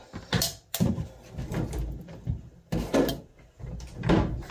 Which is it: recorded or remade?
recorded